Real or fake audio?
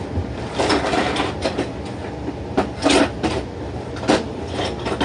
real